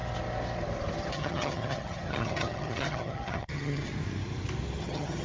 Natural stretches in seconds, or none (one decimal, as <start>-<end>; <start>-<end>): 0.0-1.1; 3.9-4.8